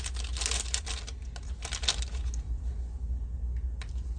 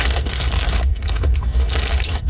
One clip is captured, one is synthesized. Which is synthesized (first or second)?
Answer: second